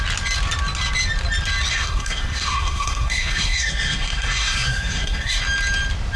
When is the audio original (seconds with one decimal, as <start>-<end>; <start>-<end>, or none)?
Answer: 0.0-1.7; 5.4-6.2